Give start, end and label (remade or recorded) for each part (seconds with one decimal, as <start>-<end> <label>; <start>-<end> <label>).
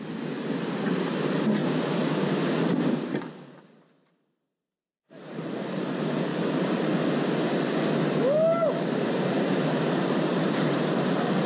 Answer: 0.0-1.6 recorded; 1.6-2.3 remade; 2.3-4.9 recorded; 4.9-5.5 remade; 5.5-6.3 recorded; 6.3-6.9 remade; 6.9-8.5 recorded; 8.5-9.8 remade; 9.8-11.5 recorded